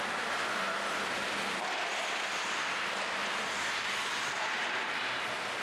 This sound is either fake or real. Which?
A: real